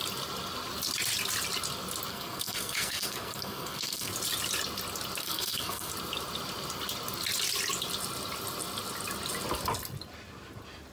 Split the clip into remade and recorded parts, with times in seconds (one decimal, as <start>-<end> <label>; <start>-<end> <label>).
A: 0.0-2.1 recorded; 2.1-4.1 remade; 4.1-5.2 recorded; 5.2-5.9 remade; 5.9-10.9 recorded